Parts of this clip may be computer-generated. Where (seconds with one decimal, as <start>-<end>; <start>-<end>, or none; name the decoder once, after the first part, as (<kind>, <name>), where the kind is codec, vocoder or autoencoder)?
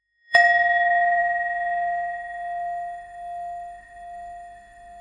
0.0-5.0 (autoencoder, DAC-VAE)